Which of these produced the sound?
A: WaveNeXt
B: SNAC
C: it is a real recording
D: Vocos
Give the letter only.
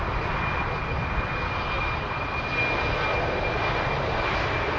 C